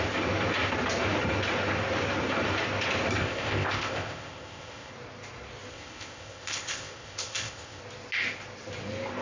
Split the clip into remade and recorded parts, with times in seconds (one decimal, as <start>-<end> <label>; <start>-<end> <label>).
0.0-3.2 recorded; 3.2-4.9 remade; 4.9-5.7 recorded; 5.7-7.8 remade; 7.8-9.2 recorded